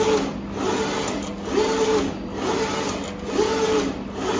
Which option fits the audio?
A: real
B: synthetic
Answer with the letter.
A